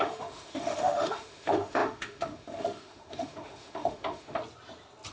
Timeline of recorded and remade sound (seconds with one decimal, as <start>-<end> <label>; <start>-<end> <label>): 0.0-4.4 remade; 4.4-5.1 recorded